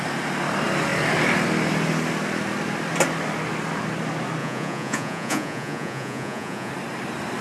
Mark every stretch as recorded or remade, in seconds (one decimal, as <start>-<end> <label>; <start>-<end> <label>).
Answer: 0.0-4.4 recorded; 4.4-6.7 remade; 6.7-7.4 recorded